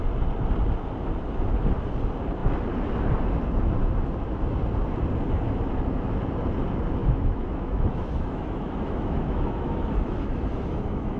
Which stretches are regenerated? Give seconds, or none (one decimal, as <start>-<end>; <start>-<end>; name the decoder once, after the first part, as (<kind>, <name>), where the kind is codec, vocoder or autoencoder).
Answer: 7.0-11.2 (autoencoder, DAC-VAE)